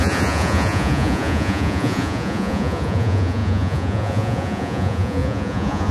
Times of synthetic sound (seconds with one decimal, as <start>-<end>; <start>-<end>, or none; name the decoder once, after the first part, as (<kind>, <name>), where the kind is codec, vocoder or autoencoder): 0.0-5.9 (vocoder, Vocos)